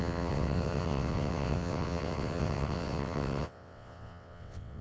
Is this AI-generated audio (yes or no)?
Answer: yes